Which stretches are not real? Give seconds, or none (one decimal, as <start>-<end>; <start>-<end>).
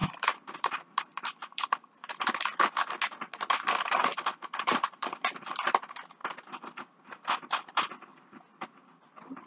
0.0-2.1; 4.1-5.8; 6.2-8.4